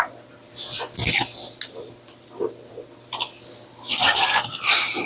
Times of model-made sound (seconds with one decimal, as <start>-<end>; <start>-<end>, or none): none